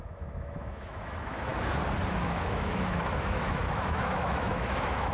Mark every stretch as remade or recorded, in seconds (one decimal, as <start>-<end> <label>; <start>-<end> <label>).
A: 0.0-1.5 remade; 1.5-2.1 recorded; 2.1-5.1 remade